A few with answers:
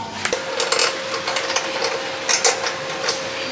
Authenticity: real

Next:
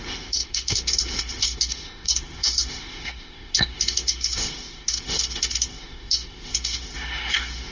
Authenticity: fake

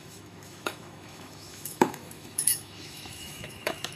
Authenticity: fake